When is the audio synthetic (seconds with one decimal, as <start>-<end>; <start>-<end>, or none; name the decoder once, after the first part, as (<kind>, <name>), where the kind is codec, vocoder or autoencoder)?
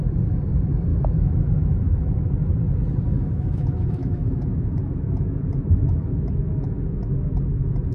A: 0.9-2.3 (autoencoder, DAC-VAE); 3.1-7.1